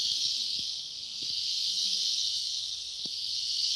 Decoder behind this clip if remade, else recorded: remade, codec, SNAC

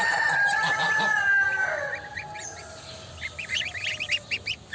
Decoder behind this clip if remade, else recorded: recorded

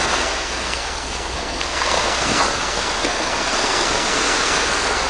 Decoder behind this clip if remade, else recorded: remade, codec, SNAC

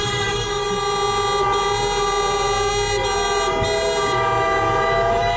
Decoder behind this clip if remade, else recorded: recorded